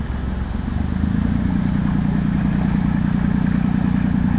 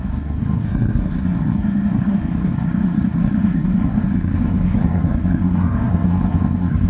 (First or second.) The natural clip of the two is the first